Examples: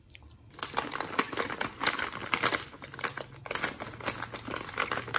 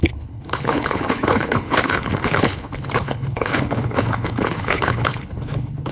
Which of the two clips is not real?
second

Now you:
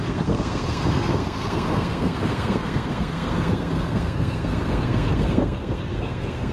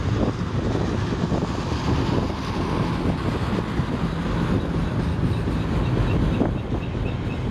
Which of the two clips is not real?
first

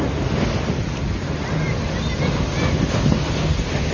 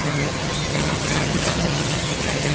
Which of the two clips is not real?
second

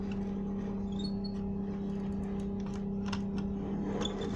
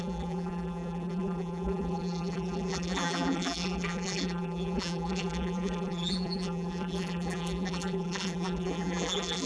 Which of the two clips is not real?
second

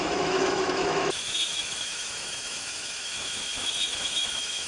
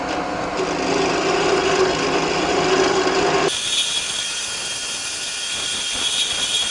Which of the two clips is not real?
first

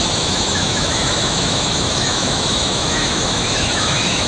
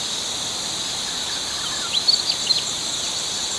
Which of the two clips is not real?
first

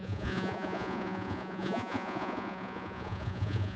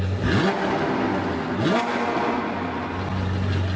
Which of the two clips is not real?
first